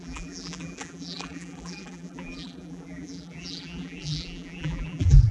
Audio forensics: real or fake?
fake